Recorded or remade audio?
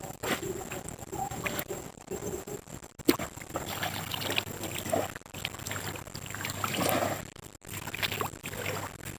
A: recorded